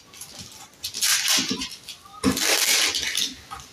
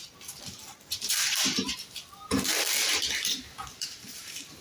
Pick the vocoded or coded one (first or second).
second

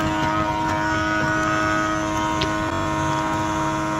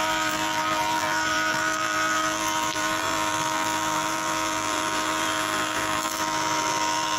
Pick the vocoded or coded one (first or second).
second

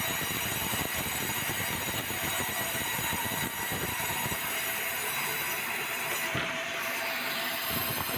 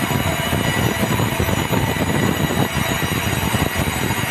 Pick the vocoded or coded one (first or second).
first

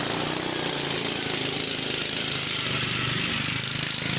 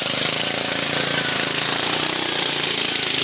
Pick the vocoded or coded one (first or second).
second